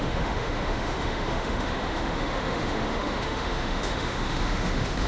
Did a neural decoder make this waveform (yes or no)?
yes